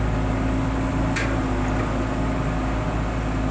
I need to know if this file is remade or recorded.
recorded